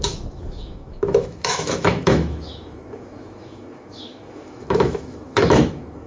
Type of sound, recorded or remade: remade